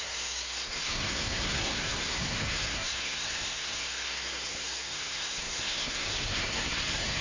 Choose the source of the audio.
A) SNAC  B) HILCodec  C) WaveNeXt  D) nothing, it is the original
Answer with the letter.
A